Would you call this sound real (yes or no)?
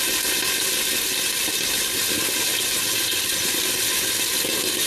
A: yes